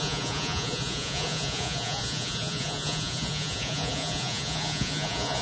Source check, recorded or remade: remade